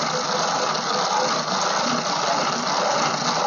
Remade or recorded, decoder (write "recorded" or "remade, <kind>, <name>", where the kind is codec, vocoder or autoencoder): recorded